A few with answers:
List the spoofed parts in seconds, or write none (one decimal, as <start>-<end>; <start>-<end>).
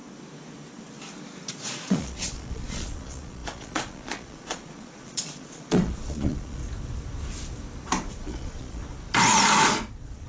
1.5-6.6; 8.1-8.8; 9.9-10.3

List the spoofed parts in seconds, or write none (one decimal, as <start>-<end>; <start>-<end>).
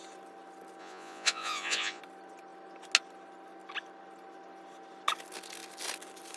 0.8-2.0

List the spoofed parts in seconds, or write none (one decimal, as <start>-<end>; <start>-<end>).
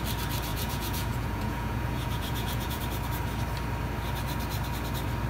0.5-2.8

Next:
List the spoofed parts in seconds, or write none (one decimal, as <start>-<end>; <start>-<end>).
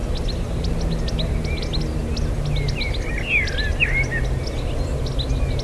none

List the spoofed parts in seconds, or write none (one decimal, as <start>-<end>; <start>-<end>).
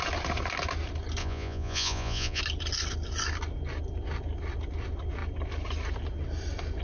1.2-2.4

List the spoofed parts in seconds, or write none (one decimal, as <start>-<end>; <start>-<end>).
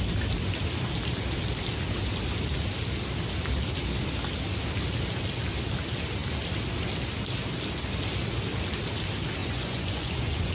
9.4-10.5